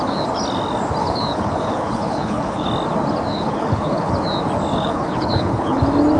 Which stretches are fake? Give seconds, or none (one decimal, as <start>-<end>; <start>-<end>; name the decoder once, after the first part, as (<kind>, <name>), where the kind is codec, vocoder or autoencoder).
1.0-2.7 (codec, HILCodec); 3.3-4.1; 4.7-5.8